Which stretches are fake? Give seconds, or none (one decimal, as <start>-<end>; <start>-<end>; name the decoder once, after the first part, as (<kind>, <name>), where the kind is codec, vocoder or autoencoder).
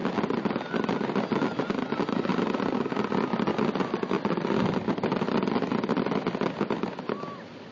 none